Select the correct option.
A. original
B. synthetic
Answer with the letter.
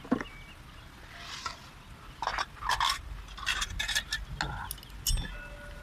A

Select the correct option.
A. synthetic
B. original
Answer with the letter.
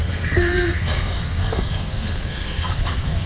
A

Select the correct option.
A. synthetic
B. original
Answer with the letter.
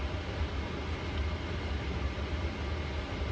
B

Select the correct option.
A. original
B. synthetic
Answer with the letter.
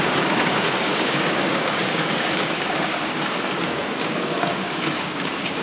B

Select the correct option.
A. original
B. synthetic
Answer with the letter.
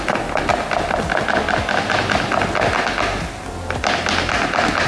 A